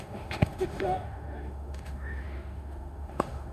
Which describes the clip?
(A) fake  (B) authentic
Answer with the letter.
A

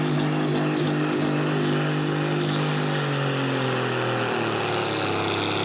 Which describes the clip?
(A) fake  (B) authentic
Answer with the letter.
B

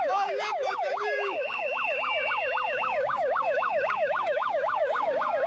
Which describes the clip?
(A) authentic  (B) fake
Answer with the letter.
B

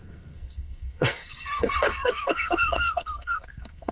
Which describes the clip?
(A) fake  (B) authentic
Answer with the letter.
A